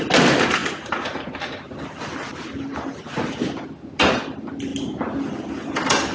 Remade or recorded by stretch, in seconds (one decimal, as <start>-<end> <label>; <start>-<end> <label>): 0.0-6.1 recorded